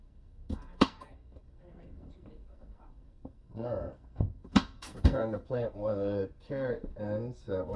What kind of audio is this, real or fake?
fake